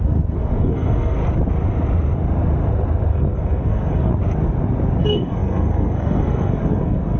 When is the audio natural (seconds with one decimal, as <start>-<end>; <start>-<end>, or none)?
1.2-3.1; 4.1-5.0